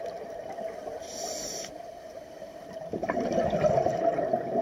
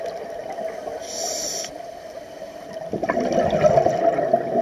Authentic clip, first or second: second